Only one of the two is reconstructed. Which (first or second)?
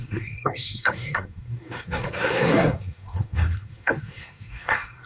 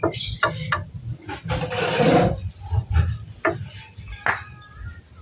first